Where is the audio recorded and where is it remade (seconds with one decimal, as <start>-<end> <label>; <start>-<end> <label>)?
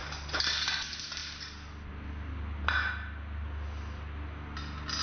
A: 0.0-5.0 recorded